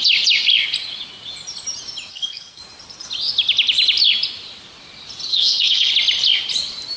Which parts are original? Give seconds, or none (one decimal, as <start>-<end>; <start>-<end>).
0.0-2.1; 2.6-5.3; 5.9-7.0